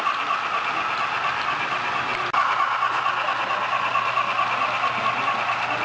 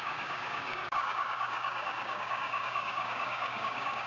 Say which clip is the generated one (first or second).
second